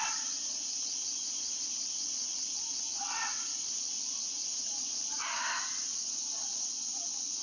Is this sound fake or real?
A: fake